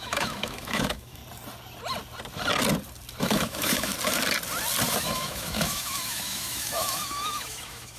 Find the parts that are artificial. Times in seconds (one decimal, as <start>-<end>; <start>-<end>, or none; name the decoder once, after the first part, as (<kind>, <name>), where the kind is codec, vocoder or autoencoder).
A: 0.0-1.2 (autoencoder, DAC-VAE); 3.2-3.9; 4.9-8.0